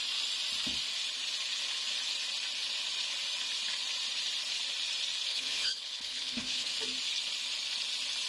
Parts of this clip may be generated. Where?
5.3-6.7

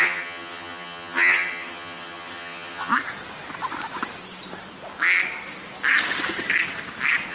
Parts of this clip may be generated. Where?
0.0-2.9

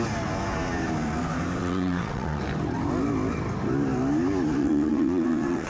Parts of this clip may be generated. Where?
1.6-2.4; 4.6-5.7

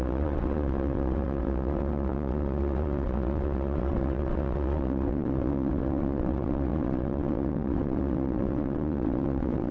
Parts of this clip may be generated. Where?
0.0-9.7

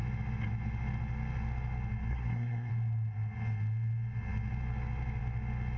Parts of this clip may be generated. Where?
2.1-2.7

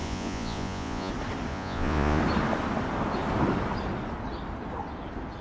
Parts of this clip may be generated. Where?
0.0-1.1; 1.5-2.2